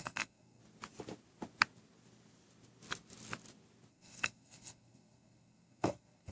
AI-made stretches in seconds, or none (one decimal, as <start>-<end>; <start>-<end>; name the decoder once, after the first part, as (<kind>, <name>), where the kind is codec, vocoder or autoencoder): 0.0-0.6 (codec, SNAC); 3.9-6.3